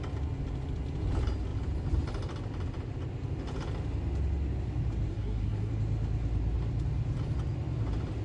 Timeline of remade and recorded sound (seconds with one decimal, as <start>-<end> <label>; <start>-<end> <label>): 0.0-5.1 recorded; 5.1-5.7 remade; 5.7-8.2 recorded